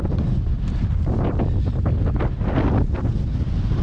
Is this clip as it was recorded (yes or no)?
yes